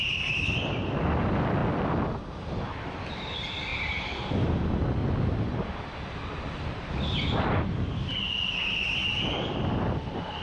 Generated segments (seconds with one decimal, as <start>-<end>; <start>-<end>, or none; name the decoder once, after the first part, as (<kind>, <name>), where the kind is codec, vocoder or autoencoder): 5.0-6.9 (vocoder, BigVGAN v2)